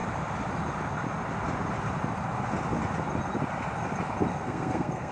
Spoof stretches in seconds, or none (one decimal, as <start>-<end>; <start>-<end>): 4.3-5.1